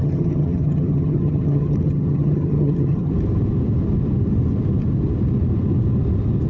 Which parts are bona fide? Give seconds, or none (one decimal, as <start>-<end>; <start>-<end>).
3.1-6.5